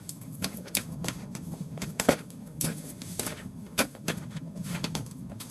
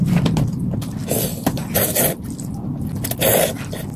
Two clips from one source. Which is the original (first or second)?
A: second